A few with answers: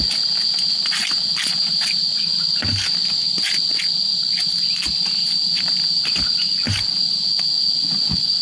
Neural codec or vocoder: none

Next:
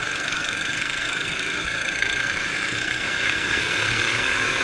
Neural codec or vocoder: codec, SNAC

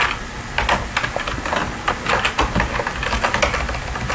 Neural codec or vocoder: none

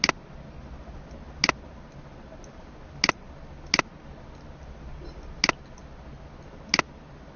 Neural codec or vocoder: none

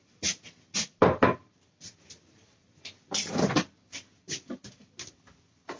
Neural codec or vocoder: none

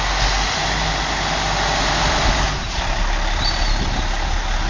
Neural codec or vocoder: none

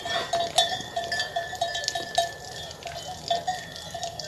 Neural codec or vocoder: none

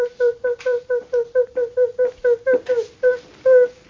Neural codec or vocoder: none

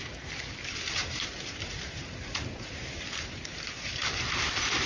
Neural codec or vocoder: vocoder, BigVGAN v2